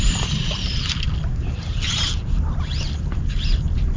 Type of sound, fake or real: real